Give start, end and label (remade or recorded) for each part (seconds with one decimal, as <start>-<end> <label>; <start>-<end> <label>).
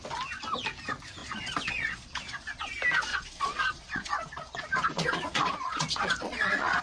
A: 0.0-1.2 recorded; 1.2-2.7 remade; 2.7-3.1 recorded; 3.1-6.8 remade